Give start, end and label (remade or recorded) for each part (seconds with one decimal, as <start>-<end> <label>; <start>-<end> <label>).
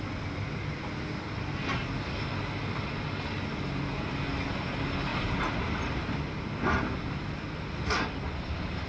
0.0-8.9 recorded